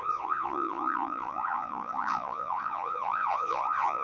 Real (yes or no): no